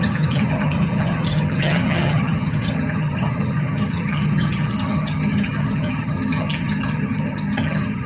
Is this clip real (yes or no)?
no